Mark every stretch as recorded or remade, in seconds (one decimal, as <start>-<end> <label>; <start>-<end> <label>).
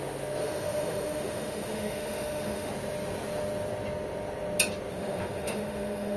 0.0-0.4 recorded; 0.4-2.7 remade; 2.7-4.9 recorded; 4.9-6.2 remade